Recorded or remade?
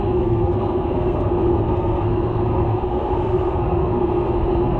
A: remade